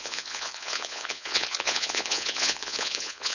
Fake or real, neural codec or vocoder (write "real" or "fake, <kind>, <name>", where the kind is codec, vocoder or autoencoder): fake, vocoder, Vocos